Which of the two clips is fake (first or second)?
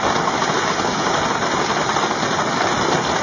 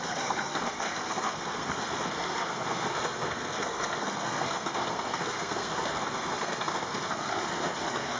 second